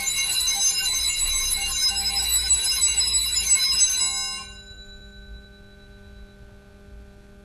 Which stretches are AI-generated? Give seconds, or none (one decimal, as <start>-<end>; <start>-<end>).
0.0-4.0